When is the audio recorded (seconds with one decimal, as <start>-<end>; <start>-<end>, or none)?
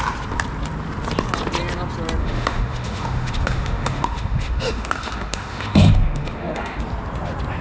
0.0-2.2; 6.8-7.6